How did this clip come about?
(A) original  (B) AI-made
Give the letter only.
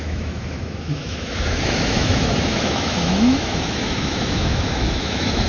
B